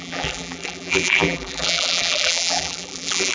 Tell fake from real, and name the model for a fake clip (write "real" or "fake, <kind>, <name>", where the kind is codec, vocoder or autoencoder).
fake, vocoder, BigVGAN v2